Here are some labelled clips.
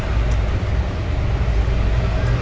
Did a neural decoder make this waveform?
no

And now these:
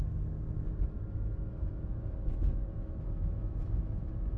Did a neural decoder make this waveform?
yes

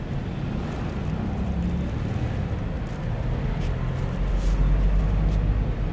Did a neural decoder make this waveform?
no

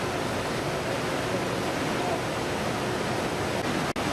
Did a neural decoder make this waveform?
no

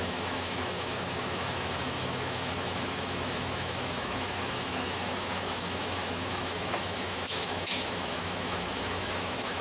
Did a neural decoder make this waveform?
yes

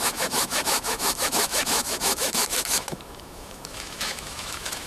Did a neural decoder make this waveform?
yes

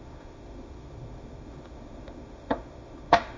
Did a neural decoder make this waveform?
yes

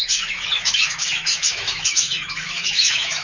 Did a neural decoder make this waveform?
yes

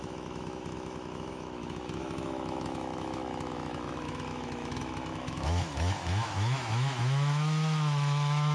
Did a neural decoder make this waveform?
yes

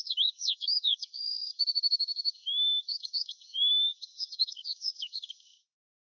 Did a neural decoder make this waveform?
yes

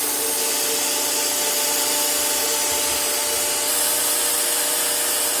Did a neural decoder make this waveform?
no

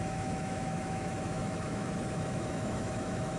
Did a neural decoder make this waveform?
yes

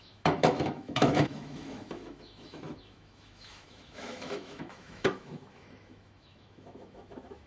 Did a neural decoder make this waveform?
yes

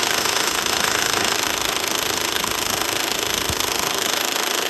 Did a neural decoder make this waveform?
yes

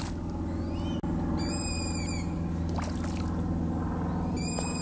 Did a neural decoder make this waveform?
no